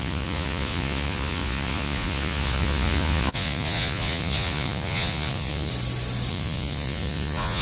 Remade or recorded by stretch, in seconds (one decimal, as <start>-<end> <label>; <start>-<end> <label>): 0.0-5.7 remade; 5.7-6.3 recorded; 6.3-7.6 remade